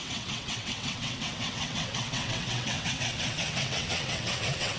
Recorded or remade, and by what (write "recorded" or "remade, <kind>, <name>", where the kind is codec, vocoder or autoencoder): remade, vocoder, WaveNeXt